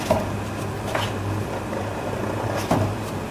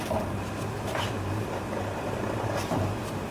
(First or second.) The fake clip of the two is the second